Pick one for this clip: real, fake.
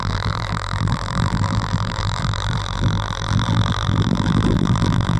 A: fake